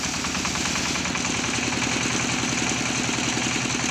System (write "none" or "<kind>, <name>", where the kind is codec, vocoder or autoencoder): none